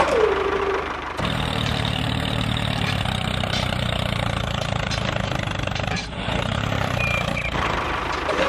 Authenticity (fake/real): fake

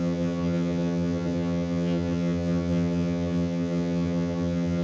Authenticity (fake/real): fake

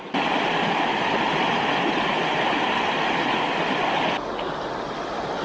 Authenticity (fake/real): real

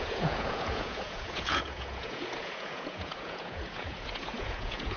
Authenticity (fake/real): fake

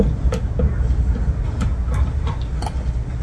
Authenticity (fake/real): real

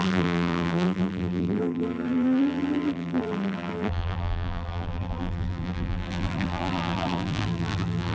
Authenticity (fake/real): fake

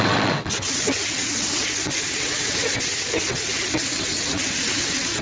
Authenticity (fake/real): fake